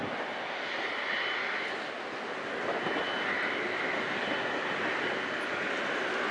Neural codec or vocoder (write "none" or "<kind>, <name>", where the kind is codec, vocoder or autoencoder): none